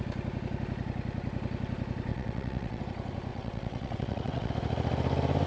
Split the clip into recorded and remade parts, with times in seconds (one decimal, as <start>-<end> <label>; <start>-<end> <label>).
0.0-2.1 recorded; 2.1-2.8 remade; 2.8-3.3 recorded; 3.3-4.5 remade; 4.5-5.5 recorded